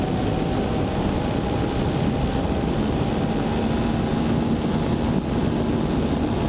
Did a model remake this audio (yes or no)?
no